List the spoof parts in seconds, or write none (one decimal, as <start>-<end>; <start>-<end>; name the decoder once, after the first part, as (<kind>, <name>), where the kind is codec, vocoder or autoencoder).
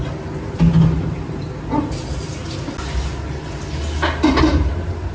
none